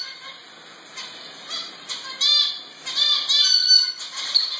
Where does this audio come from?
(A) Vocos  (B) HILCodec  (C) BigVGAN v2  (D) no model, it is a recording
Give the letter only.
D